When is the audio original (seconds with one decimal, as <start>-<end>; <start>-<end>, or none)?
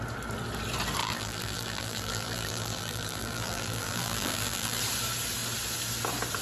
0.0-1.0; 4.8-6.4